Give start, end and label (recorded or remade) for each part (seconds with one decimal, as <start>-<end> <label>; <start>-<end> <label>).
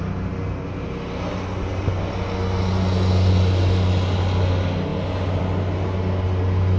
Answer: 0.0-6.8 recorded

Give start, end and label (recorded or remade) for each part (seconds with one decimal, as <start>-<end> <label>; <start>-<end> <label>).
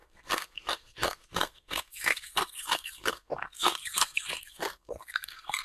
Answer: 0.0-5.6 remade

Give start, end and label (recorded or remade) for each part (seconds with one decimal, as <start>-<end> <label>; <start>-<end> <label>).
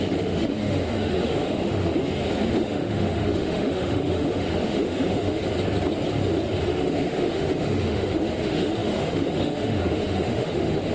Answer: 0.0-2.0 remade; 2.0-2.6 recorded; 2.6-5.4 remade; 5.4-6.6 recorded; 6.6-10.9 remade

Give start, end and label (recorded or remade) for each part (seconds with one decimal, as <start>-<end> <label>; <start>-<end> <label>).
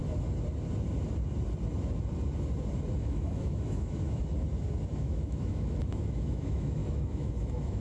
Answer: 0.0-3.0 recorded; 3.0-4.2 remade; 4.2-4.9 recorded; 4.9-7.8 remade